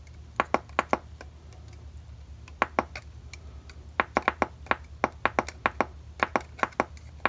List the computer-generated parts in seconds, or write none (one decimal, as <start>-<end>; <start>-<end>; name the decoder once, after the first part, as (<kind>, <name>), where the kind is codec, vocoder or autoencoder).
none

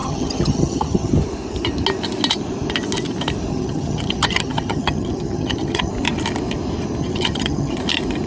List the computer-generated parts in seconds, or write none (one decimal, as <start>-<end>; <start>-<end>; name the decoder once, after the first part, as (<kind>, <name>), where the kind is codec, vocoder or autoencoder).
0.0-1.1 (vocoder, HiFi-GAN); 3.5-5.9; 7.0-7.8

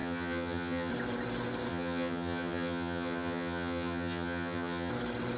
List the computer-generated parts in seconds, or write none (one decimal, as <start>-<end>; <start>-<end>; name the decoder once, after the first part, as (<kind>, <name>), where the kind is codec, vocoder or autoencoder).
0.0-0.9 (vocoder, HiFi-GAN); 1.7-4.9

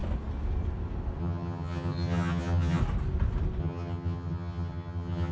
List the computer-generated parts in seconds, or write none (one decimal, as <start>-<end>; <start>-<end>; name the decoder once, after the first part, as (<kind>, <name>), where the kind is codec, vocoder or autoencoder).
1.2-2.8 (vocoder, HiFi-GAN); 3.6-5.3